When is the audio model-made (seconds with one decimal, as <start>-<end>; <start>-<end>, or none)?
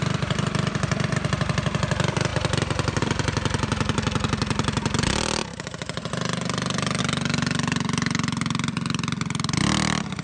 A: none